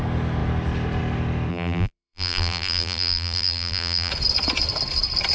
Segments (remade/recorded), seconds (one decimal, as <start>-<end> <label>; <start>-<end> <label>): 0.0-1.5 recorded; 1.5-4.1 remade; 4.1-5.3 recorded